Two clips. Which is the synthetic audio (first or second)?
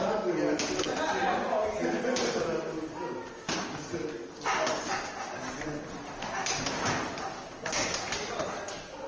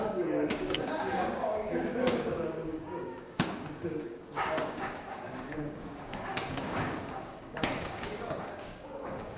second